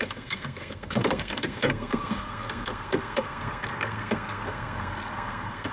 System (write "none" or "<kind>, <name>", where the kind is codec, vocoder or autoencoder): codec, SNAC